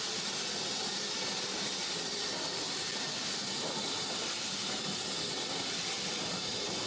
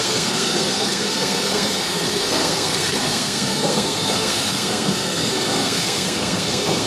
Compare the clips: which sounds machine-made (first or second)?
second